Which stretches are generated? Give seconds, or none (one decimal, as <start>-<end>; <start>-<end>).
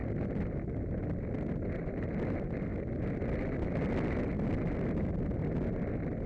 none